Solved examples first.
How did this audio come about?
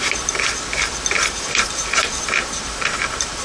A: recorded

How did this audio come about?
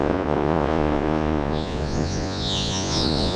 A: remade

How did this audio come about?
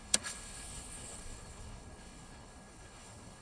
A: remade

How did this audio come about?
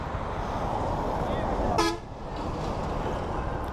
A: recorded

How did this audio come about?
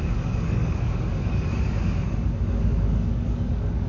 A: remade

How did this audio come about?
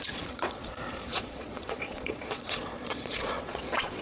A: remade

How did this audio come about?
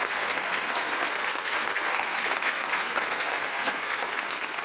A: remade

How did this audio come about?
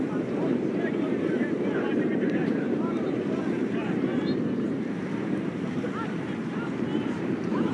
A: remade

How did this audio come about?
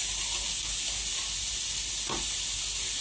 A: recorded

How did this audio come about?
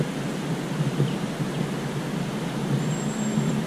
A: recorded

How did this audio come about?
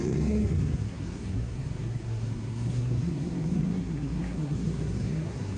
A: remade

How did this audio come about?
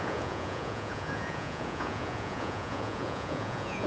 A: remade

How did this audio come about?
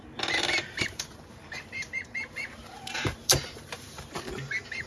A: remade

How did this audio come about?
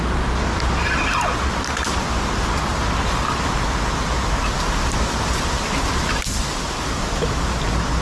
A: recorded